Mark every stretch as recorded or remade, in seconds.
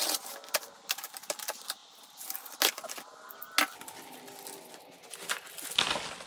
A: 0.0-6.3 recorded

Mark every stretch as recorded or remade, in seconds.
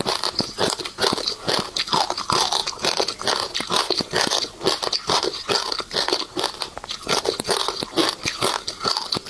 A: 0.0-9.3 recorded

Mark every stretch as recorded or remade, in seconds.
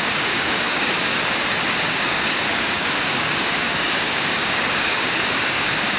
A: 0.0-1.1 remade; 1.1-1.8 recorded; 1.8-6.0 remade